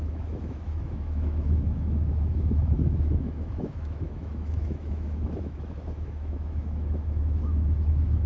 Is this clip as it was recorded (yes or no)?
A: no